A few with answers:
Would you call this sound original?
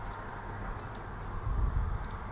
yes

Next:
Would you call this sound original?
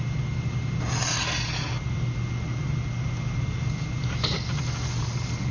yes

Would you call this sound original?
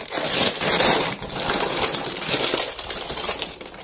no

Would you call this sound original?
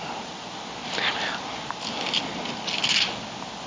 yes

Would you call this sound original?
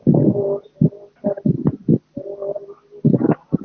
yes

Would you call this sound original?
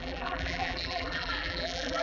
no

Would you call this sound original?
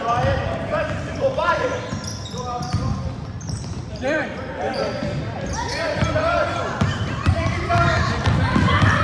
no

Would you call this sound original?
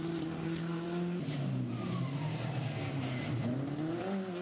yes